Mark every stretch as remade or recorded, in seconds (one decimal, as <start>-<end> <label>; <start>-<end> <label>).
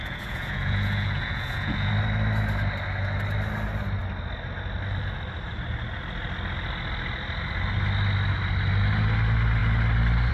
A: 0.0-1.9 remade; 1.9-10.3 recorded